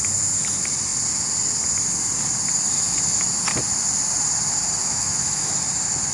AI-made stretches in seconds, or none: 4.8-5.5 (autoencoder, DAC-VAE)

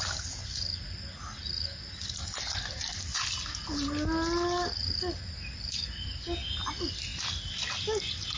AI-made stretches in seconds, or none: none